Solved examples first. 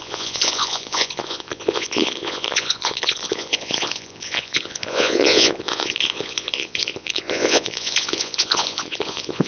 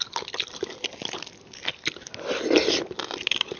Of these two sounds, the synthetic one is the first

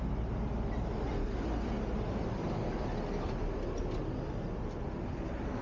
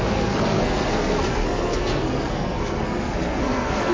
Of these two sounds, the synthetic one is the second